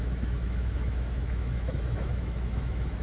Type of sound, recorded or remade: remade